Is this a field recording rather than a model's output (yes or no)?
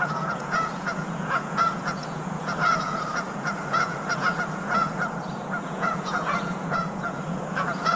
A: no